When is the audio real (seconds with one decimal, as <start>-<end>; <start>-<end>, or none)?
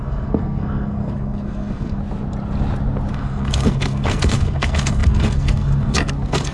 2.0-3.1